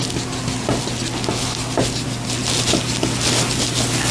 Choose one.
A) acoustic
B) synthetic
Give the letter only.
A